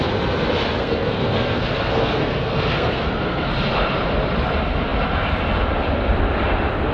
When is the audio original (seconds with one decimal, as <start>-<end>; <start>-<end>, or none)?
0.0-0.8; 3.5-6.9